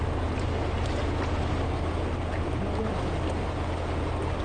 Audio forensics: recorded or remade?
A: recorded